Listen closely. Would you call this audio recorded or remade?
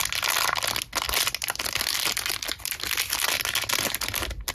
recorded